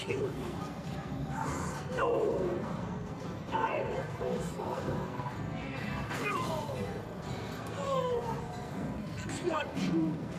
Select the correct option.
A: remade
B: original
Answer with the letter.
A